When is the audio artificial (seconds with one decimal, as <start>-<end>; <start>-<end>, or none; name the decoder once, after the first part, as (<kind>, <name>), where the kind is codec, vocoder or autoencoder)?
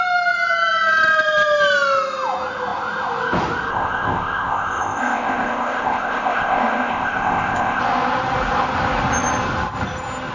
3.7-7.8 (codec, ZipCodec)